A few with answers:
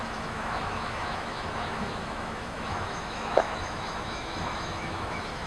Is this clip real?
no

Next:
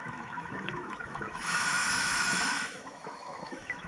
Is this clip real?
no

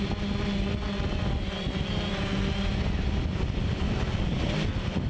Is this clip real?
yes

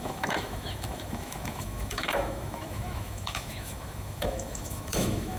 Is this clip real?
no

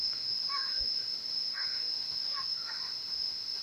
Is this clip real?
no